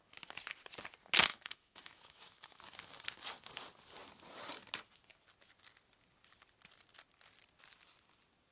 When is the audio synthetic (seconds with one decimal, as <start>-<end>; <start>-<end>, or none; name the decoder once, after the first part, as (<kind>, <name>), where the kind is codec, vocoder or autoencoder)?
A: 1.3-2.6 (autoencoder, DAC-VAE)